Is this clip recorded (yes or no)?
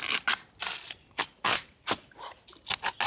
yes